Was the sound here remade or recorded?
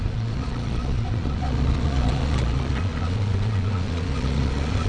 remade